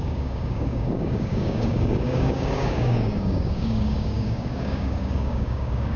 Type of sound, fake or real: fake